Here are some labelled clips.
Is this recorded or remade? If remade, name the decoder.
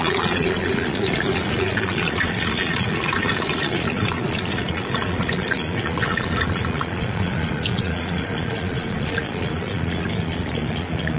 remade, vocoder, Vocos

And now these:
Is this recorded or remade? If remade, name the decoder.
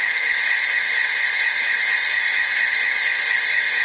remade, codec, HILCodec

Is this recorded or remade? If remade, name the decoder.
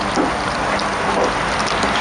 recorded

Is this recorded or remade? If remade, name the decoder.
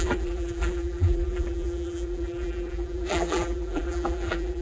remade, vocoder, BigVGAN v2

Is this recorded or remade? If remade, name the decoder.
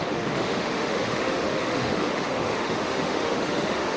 remade, autoencoder, DAC-VAE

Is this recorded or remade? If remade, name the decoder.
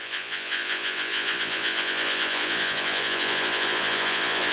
remade, vocoder, Vocos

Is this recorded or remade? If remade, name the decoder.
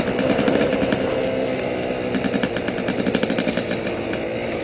recorded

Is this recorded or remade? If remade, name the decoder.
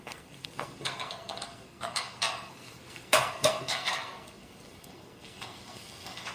remade, codec, SNAC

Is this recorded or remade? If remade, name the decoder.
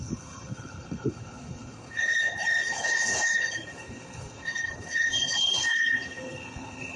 remade, codec, HILCodec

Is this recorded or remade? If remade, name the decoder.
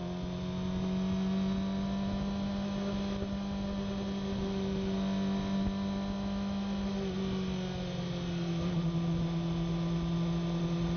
recorded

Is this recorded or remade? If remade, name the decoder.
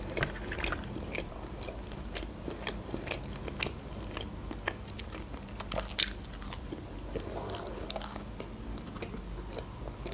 recorded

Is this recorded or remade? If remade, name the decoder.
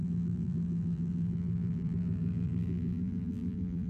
remade, vocoder, BigVGAN v2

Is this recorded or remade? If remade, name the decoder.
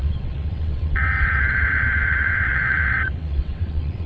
remade, vocoder, WaveNeXt